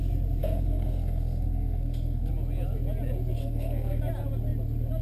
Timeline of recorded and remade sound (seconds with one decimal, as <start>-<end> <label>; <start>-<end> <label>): 0.0-0.4 recorded; 0.4-2.3 remade; 2.3-3.4 recorded; 3.4-4.0 remade; 4.0-5.0 recorded